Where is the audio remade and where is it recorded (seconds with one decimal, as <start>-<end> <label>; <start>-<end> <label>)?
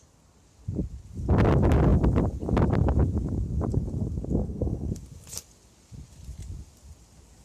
0.0-4.4 recorded; 4.4-4.9 remade; 4.9-7.4 recorded